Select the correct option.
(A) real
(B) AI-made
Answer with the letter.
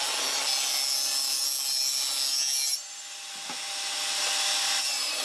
A